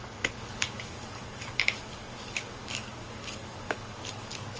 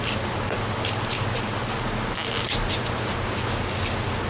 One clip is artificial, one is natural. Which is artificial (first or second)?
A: first